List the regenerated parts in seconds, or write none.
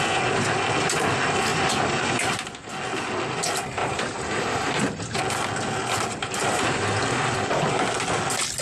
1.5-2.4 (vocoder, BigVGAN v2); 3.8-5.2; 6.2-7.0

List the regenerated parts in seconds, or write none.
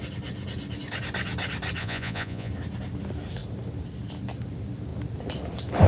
1.8-2.5 (vocoder, Vocos)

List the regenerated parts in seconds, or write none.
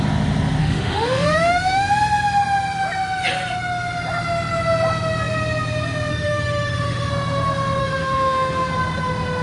0.6-1.9 (autoencoder, DAC-VAE); 6.1-7.1; 7.8-8.7